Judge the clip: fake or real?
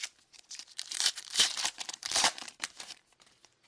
fake